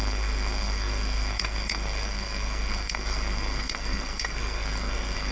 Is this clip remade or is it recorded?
remade